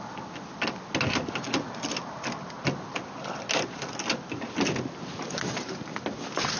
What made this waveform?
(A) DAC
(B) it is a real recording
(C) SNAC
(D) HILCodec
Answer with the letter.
B